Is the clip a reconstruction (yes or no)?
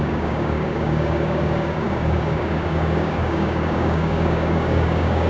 yes